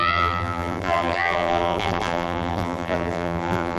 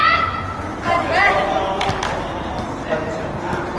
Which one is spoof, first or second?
first